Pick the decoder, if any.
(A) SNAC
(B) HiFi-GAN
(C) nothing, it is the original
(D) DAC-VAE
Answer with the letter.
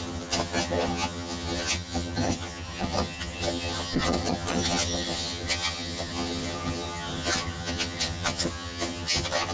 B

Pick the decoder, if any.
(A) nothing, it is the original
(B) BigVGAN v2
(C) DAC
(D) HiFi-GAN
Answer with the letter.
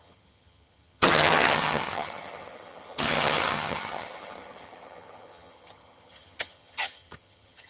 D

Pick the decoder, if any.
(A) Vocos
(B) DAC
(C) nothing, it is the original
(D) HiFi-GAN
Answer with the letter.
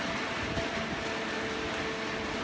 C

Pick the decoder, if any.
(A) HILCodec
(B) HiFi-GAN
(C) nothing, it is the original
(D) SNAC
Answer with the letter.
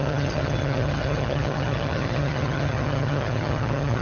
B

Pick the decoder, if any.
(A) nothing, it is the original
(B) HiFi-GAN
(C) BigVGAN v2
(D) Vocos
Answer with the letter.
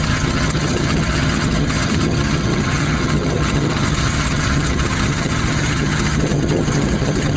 B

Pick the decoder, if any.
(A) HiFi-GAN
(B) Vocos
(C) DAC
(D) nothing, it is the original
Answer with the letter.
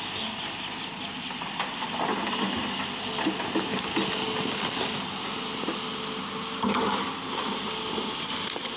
D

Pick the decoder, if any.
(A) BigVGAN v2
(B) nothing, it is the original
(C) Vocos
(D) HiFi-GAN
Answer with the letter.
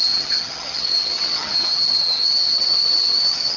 D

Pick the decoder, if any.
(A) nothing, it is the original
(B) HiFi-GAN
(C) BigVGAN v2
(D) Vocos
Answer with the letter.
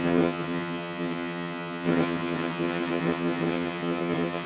B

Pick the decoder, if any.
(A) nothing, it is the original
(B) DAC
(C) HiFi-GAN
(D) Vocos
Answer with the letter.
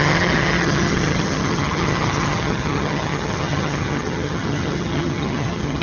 C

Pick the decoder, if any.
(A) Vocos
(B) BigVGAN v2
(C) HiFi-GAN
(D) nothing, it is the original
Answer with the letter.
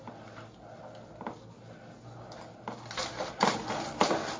D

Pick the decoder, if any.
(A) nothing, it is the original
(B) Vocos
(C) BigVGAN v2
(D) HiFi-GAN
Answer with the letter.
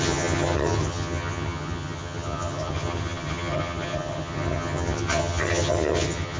D